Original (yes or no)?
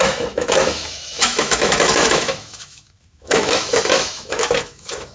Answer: no